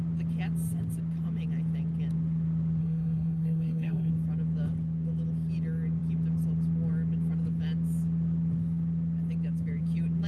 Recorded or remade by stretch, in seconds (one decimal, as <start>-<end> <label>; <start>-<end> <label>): 0.0-2.8 recorded; 2.8-4.1 remade; 4.1-10.3 recorded

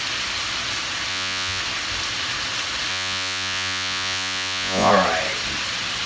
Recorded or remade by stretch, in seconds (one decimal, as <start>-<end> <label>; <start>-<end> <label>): 0.0-1.1 recorded; 1.1-1.6 remade; 1.6-2.9 recorded; 2.9-4.9 remade; 4.9-6.1 recorded

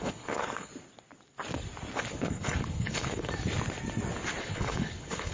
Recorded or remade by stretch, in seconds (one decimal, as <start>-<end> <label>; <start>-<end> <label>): 0.0-0.7 remade; 0.7-2.1 recorded; 2.1-3.3 remade; 3.3-4.4 recorded; 4.4-5.3 remade

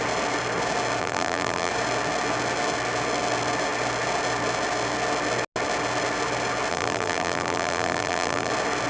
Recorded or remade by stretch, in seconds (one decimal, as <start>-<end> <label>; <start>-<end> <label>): 0.0-1.0 recorded; 1.0-1.7 remade; 1.7-6.7 recorded; 6.7-8.5 remade; 8.5-8.9 recorded

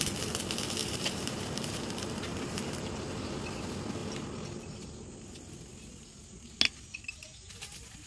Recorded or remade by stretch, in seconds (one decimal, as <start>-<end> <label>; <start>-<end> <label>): 0.0-0.8 recorded; 0.8-3.3 remade; 3.3-8.1 recorded

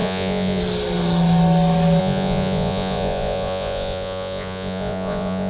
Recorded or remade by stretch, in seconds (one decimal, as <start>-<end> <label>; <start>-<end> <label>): 0.0-0.6 remade; 0.6-2.0 recorded; 2.0-5.5 remade

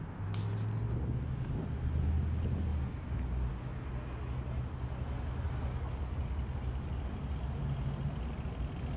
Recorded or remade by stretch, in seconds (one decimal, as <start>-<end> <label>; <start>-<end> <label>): 0.0-9.0 recorded

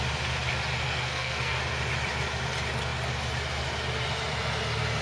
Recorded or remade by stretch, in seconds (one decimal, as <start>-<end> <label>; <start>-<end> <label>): 0.0-0.8 recorded; 0.8-1.6 remade; 1.6-5.0 recorded